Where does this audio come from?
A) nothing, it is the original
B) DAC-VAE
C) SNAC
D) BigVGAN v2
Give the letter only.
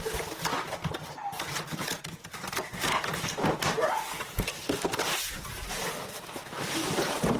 A